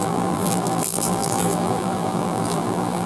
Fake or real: fake